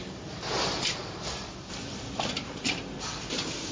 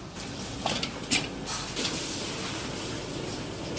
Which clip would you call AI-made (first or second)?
first